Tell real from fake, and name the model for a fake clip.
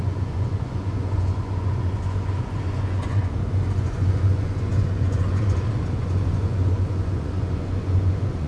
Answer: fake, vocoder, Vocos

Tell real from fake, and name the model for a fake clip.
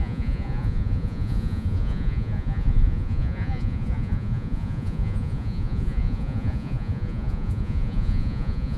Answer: fake, vocoder, Vocos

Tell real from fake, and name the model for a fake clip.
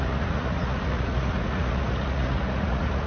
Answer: fake, vocoder, Vocos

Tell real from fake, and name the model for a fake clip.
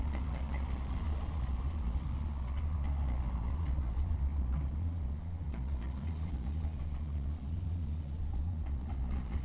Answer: fake, vocoder, Vocos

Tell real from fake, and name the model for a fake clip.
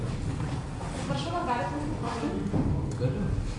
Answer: real